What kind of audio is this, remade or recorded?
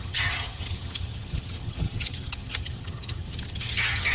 remade